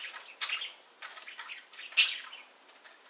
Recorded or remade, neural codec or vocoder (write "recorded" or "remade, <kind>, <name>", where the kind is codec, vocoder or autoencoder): recorded